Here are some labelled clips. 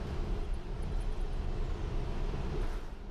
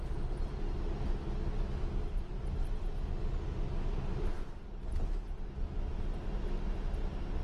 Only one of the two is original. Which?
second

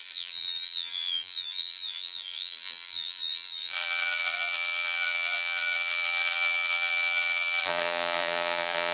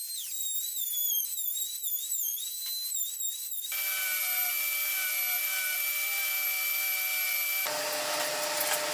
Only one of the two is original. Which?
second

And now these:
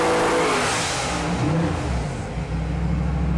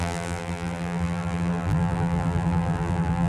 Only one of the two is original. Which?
first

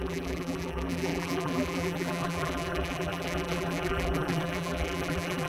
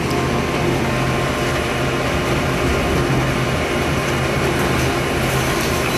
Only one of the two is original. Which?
second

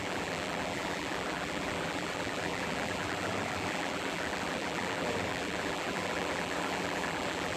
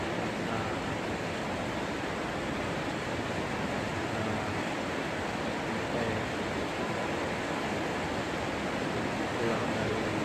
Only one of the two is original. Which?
second